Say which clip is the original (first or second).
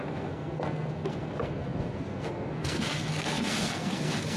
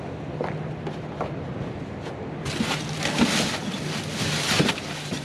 second